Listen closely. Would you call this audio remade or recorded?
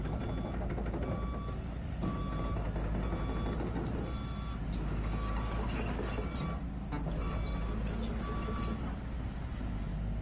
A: recorded